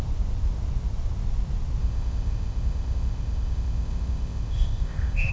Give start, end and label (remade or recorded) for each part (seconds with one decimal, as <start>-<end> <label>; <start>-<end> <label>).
0.0-1.8 recorded; 1.8-5.3 remade